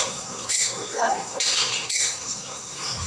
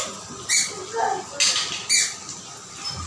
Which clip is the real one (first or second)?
second